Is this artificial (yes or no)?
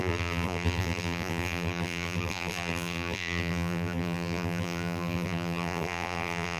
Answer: yes